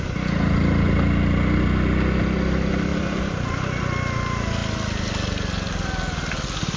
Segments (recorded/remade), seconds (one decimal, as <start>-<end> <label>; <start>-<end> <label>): 0.0-6.8 recorded